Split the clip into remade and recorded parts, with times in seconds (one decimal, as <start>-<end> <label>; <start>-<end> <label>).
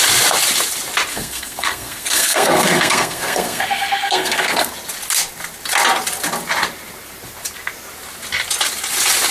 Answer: 0.0-1.1 recorded; 1.1-4.7 remade; 4.7-9.3 recorded